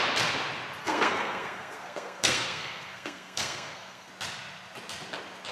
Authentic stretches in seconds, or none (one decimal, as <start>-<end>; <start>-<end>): 0.0-0.8; 4.1-5.5